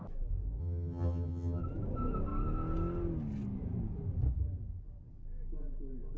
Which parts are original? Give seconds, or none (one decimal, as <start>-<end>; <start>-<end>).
0.0-0.6; 1.6-6.2

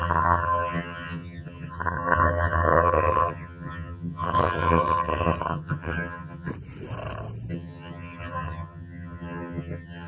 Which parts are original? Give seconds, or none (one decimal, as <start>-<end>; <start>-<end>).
6.5-7.5

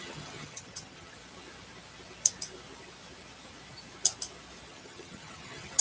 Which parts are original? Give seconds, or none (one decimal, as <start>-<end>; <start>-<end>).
1.2-4.7

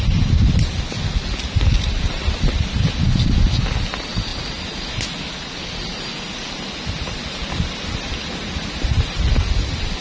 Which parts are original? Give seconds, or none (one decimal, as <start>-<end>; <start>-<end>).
0.0-10.0

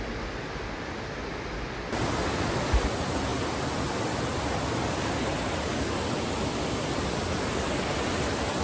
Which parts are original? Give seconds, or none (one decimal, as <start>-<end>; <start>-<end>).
0.0-8.6